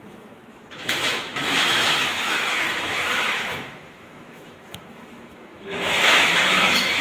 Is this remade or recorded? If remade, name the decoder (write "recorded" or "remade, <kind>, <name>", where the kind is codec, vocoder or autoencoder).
remade, autoencoder, DAC-VAE